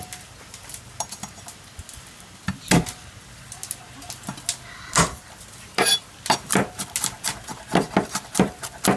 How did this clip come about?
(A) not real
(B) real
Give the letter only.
B